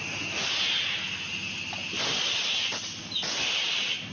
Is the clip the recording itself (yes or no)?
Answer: yes